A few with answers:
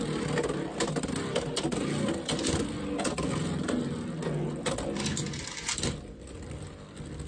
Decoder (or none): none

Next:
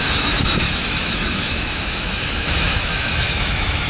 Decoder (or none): autoencoder, DAC-VAE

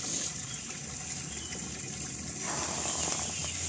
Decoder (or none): none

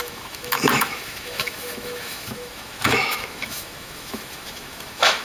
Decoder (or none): autoencoder, DAC-VAE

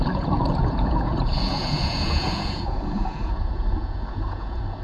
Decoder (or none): vocoder, Vocos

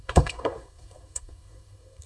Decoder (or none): codec, SNAC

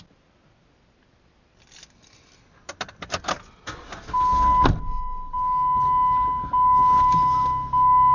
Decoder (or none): none